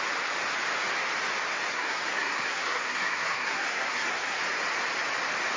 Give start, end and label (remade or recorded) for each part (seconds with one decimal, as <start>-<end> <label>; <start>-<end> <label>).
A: 0.0-1.7 recorded; 1.7-4.4 remade; 4.4-5.6 recorded